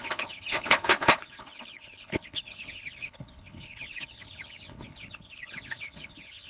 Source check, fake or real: fake